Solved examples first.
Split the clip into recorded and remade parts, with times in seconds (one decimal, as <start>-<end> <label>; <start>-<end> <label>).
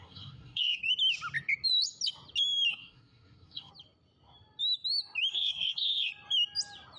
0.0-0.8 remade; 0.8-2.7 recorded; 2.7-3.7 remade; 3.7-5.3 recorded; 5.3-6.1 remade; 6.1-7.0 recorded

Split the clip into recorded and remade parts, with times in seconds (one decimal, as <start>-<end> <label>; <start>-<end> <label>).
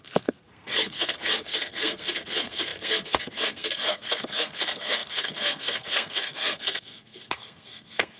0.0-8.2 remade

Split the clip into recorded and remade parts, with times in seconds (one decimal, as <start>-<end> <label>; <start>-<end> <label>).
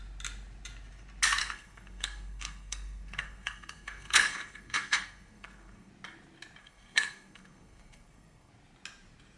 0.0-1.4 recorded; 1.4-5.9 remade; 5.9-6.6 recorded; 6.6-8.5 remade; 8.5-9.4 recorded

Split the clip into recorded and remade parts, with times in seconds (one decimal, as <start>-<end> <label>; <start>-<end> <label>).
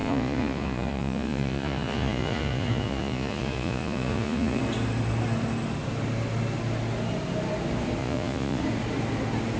0.0-4.6 remade; 4.6-8.0 recorded; 8.0-8.6 remade; 8.6-9.6 recorded